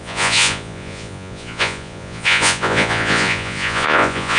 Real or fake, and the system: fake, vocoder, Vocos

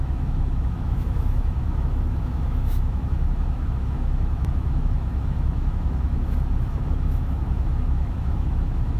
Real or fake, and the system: fake, autoencoder, DAC-VAE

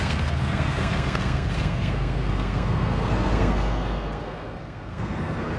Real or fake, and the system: fake, codec, SNAC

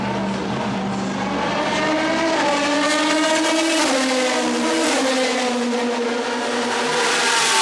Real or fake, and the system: real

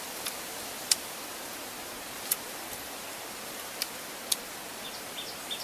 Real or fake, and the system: real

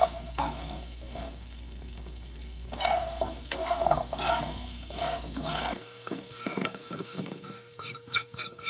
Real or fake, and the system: fake, codec, SNAC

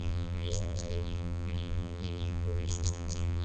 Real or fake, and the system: fake, vocoder, BigVGAN v2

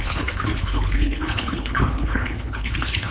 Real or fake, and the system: fake, codec, HILCodec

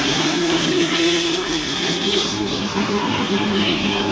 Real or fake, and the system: fake, codec, SNAC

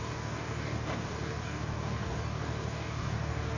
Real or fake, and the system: fake, codec, DAC